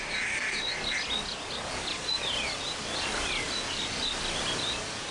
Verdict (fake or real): real